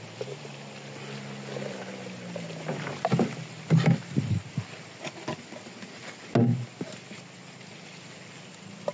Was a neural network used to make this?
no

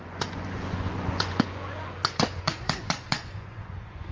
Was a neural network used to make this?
yes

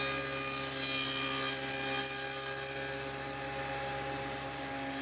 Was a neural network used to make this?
no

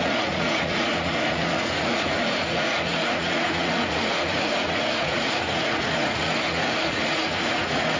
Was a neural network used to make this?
yes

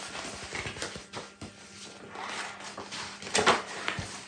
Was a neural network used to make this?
no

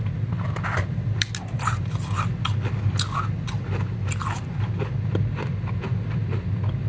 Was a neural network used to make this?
no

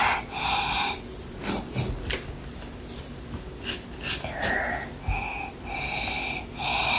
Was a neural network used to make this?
no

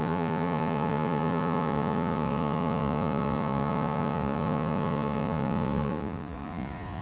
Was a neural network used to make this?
yes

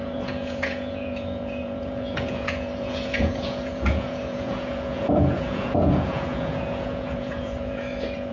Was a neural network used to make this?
yes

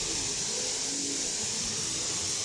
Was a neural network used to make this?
no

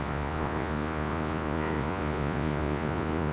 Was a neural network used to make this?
yes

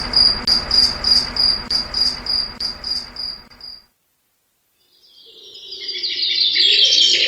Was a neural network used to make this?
no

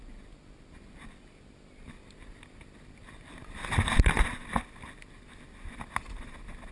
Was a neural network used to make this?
no